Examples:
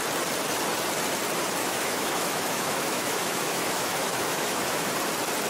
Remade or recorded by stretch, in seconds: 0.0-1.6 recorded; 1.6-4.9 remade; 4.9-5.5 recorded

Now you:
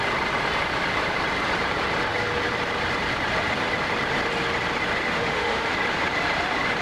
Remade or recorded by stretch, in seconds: 0.0-5.0 recorded; 5.0-5.7 remade; 5.7-6.8 recorded

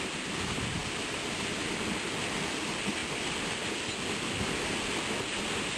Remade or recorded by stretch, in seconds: 0.0-5.8 recorded